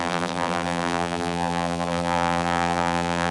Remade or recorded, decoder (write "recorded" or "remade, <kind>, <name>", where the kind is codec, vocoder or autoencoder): remade, vocoder, BigVGAN v2